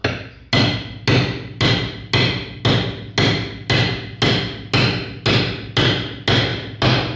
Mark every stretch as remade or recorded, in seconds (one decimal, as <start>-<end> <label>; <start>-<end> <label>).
0.0-7.2 recorded